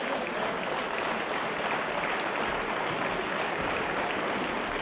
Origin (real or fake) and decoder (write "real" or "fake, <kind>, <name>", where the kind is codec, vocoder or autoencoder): real